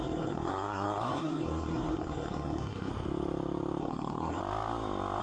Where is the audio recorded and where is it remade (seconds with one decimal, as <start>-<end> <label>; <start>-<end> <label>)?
0.0-2.9 remade; 2.9-3.8 recorded; 3.8-4.4 remade; 4.4-5.2 recorded